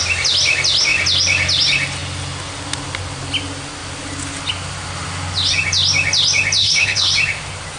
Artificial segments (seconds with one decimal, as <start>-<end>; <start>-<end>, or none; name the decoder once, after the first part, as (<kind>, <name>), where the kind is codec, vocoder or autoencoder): 6.6-7.1 (codec, HILCodec)